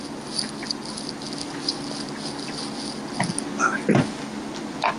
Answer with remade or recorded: recorded